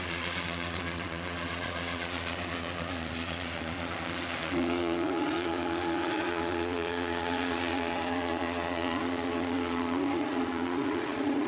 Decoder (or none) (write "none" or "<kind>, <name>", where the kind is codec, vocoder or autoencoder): vocoder, Vocos